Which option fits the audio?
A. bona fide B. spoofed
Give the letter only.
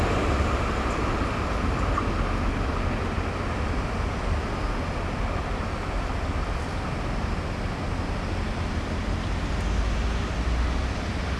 A